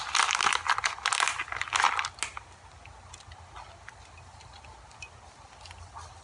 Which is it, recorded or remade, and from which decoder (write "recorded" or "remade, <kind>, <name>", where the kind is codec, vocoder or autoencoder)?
recorded